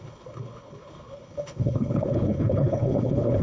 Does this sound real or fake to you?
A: fake